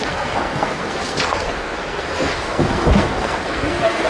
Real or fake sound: fake